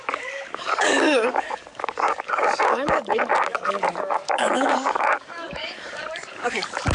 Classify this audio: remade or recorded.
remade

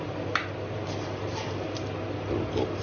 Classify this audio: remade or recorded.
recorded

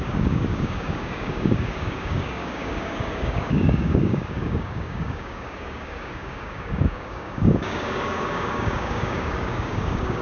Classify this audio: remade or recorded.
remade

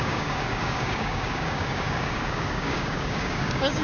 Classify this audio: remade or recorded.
remade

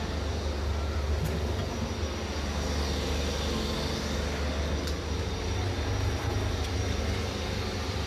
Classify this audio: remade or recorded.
recorded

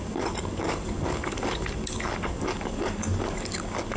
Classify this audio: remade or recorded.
remade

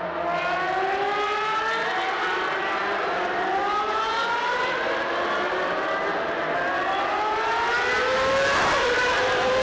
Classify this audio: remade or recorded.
recorded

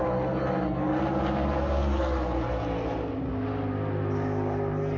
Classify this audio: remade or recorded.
recorded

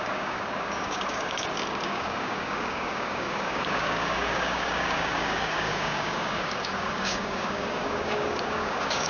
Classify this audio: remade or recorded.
remade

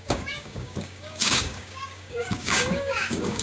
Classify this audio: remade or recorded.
remade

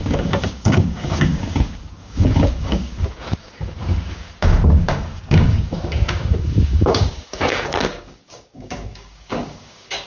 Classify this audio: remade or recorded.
remade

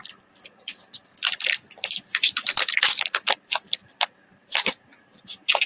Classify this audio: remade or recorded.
recorded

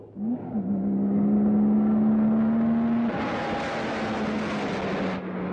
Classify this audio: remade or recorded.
recorded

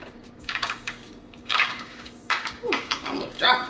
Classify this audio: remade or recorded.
remade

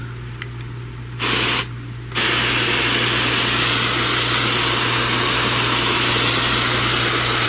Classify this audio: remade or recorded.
recorded